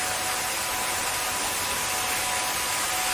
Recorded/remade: recorded